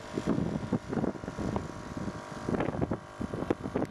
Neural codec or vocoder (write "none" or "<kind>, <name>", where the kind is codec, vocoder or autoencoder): none